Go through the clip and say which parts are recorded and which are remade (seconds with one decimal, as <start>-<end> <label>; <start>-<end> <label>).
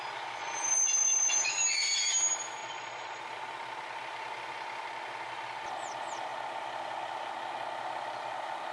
0.0-0.4 recorded; 0.4-1.5 remade; 1.5-2.6 recorded; 2.6-3.2 remade; 3.2-8.7 recorded